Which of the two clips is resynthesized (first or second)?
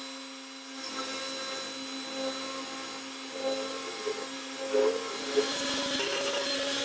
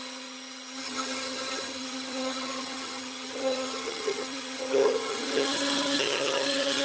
second